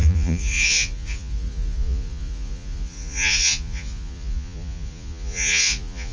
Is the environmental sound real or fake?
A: fake